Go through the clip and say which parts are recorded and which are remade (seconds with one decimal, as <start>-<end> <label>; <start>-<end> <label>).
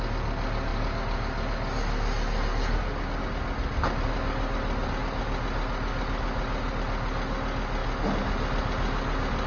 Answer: 0.0-9.5 recorded